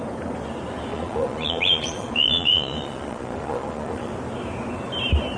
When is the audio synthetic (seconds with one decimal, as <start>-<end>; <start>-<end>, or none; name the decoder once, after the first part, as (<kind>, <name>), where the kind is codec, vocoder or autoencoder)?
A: 0.9-4.1 (vocoder, Vocos)